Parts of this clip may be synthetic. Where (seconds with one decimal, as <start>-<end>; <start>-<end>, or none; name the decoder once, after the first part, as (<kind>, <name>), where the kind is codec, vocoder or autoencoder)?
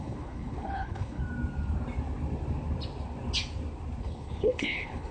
0.0-1.2 (codec, HILCodec); 4.0-5.1